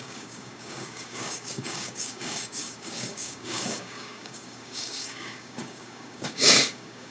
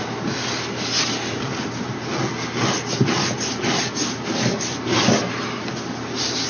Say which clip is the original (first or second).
second